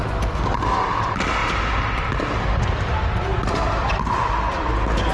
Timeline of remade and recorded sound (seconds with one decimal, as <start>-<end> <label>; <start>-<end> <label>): 0.0-5.1 recorded